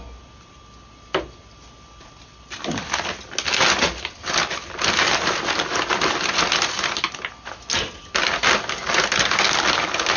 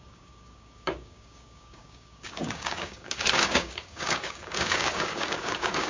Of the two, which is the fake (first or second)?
second